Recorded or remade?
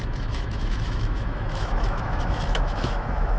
remade